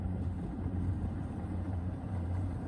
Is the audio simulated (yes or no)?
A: yes